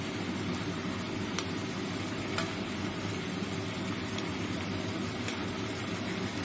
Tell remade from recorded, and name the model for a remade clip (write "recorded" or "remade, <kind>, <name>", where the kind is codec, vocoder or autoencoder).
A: recorded